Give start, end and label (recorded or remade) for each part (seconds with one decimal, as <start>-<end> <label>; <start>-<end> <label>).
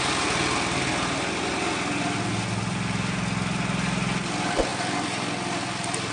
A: 0.0-6.1 recorded